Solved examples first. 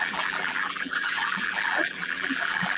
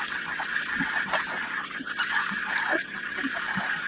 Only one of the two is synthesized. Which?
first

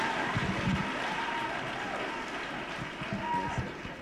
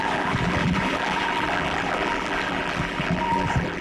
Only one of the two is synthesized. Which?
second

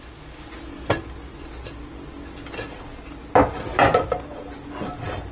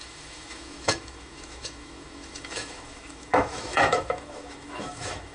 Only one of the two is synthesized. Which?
second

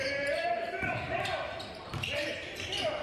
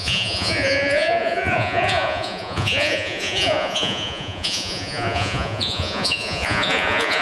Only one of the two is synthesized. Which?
second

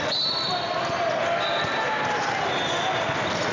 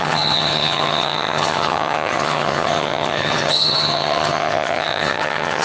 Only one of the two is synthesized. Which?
second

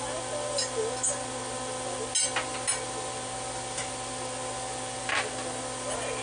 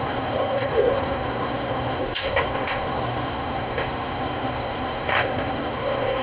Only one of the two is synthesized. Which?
second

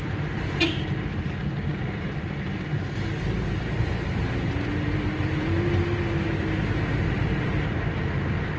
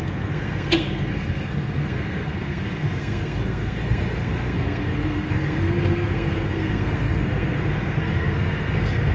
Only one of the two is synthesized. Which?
second